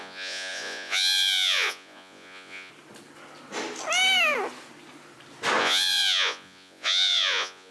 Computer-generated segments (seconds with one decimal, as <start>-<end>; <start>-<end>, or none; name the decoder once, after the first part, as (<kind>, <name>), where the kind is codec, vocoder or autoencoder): 0.0-2.7 (vocoder, Vocos); 5.6-7.7

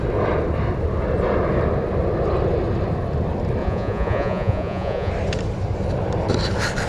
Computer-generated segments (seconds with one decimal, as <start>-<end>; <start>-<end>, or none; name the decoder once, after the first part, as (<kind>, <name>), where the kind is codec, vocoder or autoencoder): 3.6-5.1 (vocoder, Vocos)